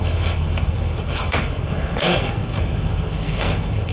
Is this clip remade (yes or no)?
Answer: yes